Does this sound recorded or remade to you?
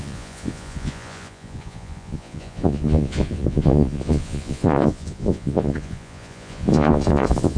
remade